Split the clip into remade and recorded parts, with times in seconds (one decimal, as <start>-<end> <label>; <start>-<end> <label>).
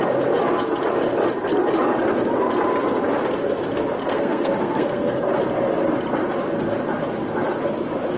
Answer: 0.0-4.0 recorded; 4.0-5.4 remade; 5.4-8.2 recorded